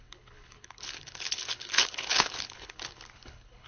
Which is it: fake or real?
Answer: fake